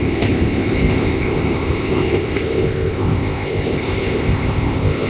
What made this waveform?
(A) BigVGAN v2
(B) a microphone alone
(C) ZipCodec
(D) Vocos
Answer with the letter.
C